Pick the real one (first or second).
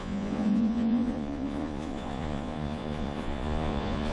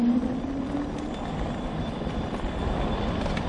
second